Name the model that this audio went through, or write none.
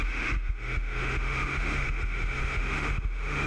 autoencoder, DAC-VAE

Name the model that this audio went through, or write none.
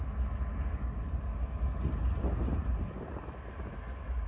none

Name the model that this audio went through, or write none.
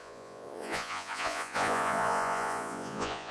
vocoder, Vocos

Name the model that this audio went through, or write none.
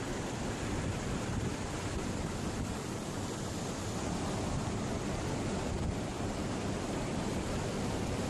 vocoder, BigVGAN v2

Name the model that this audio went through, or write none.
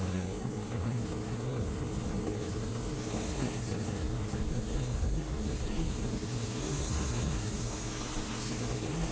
codec, SNAC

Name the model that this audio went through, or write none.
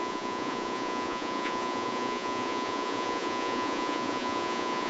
vocoder, Vocos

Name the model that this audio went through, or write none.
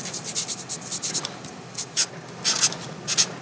none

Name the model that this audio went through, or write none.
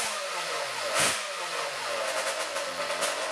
vocoder, Vocos